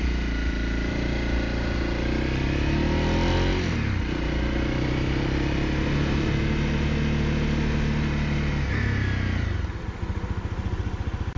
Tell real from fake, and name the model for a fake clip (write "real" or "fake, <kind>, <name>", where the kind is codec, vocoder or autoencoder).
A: real